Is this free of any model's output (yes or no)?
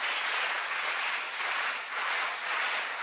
no